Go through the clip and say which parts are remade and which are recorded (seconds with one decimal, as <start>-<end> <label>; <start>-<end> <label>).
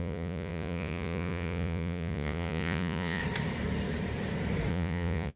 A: 0.0-3.2 remade; 3.2-4.7 recorded; 4.7-5.4 remade